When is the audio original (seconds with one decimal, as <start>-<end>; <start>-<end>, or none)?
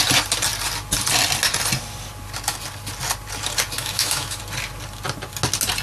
0.0-3.8; 4.4-5.8